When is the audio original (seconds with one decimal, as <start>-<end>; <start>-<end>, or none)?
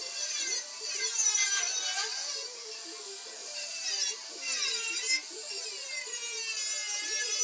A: 0.0-2.1; 2.7-3.4; 4.3-7.4